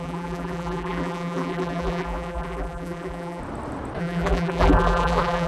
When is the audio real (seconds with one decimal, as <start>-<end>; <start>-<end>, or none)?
3.4-4.0